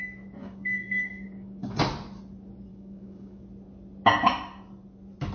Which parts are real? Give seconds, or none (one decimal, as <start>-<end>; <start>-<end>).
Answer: 0.0-0.4; 1.8-2.7; 3.4-5.3